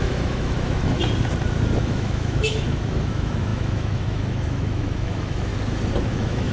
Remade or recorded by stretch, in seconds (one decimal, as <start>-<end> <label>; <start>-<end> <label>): 0.0-1.0 remade; 1.0-1.8 recorded; 1.8-5.5 remade; 5.5-6.1 recorded; 6.1-6.5 remade